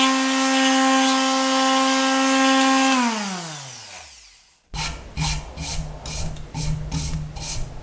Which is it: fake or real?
real